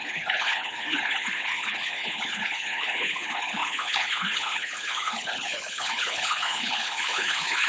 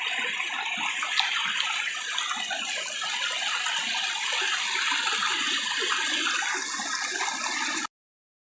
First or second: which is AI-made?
first